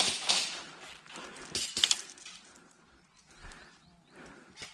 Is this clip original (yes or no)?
yes